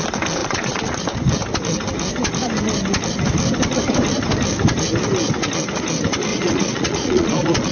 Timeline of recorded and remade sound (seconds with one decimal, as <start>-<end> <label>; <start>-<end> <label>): 0.0-0.4 recorded; 0.4-1.0 remade; 1.0-6.3 recorded; 6.3-7.7 remade